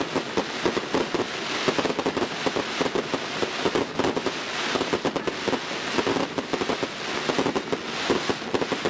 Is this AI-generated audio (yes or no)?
no